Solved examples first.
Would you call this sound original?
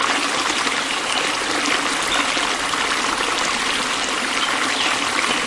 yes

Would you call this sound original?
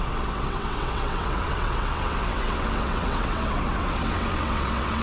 no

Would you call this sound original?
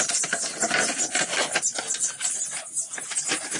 yes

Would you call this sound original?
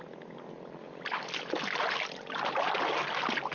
yes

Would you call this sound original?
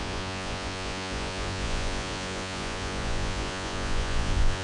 no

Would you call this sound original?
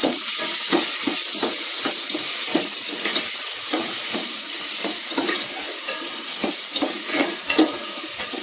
no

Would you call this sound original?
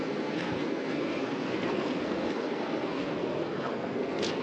no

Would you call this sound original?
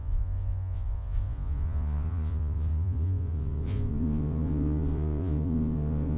no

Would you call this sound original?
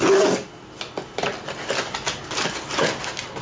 yes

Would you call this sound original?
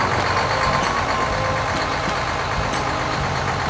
yes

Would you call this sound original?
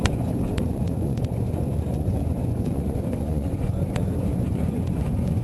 no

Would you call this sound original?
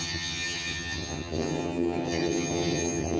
no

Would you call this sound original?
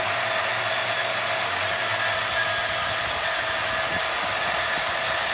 yes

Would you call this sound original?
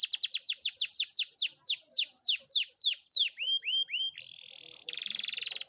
yes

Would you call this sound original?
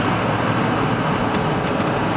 yes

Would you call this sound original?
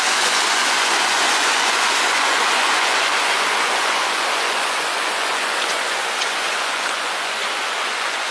no